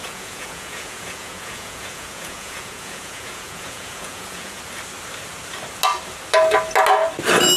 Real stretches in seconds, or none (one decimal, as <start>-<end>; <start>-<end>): 4.6-7.6